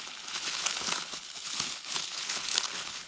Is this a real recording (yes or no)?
no